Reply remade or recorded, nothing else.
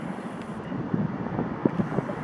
recorded